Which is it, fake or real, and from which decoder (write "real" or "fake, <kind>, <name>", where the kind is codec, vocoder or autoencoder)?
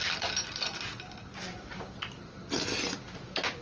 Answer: real